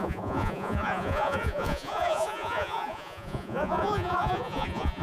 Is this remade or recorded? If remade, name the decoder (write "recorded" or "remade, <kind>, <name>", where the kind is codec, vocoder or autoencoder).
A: remade, vocoder, Vocos